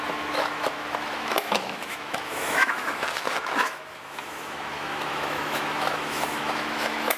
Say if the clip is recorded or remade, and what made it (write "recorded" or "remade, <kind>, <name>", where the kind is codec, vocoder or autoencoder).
remade, autoencoder, DAC-VAE